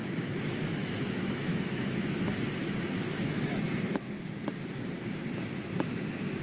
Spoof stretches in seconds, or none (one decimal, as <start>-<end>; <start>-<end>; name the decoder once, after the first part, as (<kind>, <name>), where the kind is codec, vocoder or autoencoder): 0.0-2.2 (autoencoder, DAC-VAE); 2.6-4.1